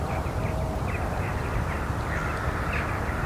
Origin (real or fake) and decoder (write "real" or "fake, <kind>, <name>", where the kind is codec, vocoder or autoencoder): real